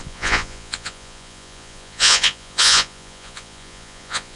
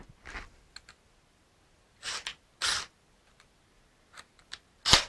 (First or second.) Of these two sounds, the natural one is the second